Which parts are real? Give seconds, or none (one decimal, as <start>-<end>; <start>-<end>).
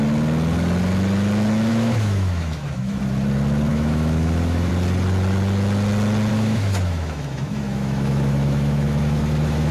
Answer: 0.0-1.7; 3.0-3.7; 4.7-6.3